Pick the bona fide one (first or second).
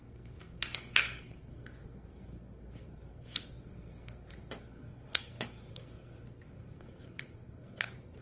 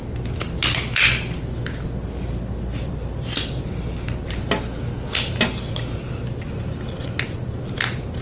second